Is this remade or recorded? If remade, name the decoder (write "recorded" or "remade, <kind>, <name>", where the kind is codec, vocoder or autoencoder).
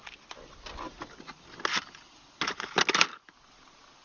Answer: recorded